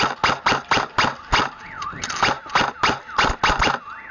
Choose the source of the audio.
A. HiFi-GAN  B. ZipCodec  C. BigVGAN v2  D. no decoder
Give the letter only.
D